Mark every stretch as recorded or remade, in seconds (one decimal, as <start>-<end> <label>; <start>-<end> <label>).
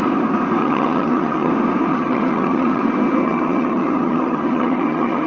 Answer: 0.0-0.6 recorded; 0.6-1.5 remade; 1.5-1.9 recorded; 1.9-2.8 remade; 2.8-3.2 recorded; 3.2-5.3 remade